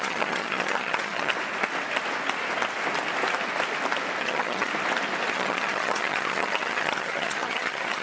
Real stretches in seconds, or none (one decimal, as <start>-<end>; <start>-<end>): 1.3-4.2; 4.7-5.3